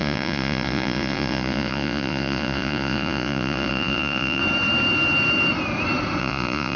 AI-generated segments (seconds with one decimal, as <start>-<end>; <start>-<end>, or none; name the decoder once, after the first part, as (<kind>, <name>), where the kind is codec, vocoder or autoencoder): 0.0-4.4 (vocoder, Vocos); 6.2-6.8